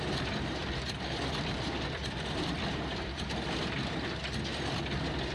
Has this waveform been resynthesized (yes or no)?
yes